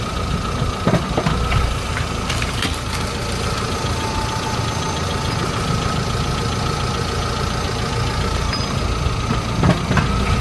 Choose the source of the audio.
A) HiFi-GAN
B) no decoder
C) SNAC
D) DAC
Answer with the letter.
B